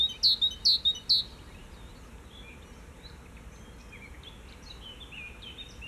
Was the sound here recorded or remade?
recorded